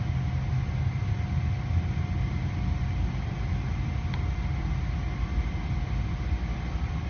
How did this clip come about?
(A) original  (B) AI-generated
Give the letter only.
A